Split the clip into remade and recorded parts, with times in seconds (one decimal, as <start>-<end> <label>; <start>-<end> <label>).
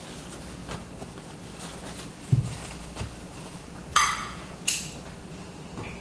0.0-4.2 recorded; 4.2-4.8 remade; 4.8-6.0 recorded